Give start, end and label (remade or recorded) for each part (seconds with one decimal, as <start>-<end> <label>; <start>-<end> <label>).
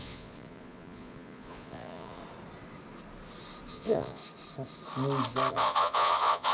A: 0.0-2.2 remade; 2.2-3.7 recorded; 3.7-4.2 remade; 4.2-5.5 recorded; 5.5-6.5 remade